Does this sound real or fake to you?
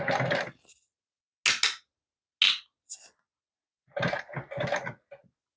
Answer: real